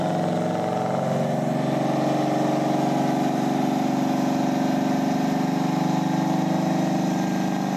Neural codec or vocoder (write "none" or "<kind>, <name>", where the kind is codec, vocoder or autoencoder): none